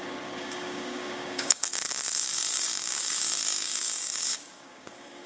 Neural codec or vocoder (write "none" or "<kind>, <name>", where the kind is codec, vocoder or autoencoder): codec, DAC